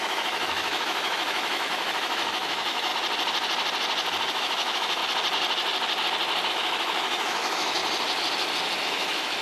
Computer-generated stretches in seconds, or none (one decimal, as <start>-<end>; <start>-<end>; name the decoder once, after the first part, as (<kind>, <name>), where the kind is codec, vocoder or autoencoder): 0.0-2.9 (autoencoder, DAC-VAE); 4.3-5.0; 6.5-7.8; 8.8-9.4